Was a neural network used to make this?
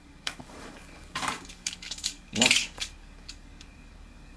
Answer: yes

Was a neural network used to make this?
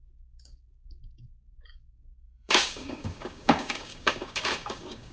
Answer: yes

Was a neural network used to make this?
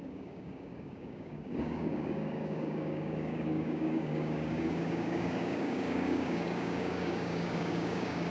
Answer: yes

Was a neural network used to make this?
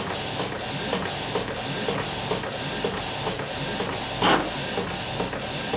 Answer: no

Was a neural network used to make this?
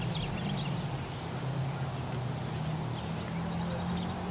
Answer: no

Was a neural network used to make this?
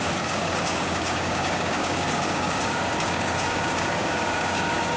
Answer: yes